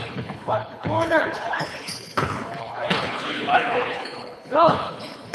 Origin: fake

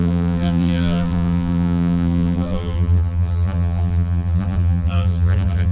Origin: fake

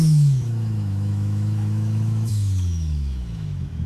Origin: fake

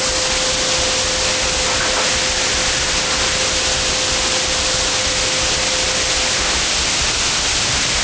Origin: real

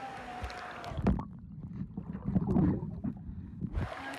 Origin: real